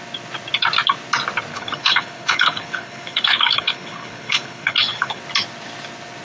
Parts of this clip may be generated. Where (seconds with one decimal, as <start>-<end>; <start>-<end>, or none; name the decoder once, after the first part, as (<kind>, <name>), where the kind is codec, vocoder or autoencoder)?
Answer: 1.5-5.2 (codec, HILCodec)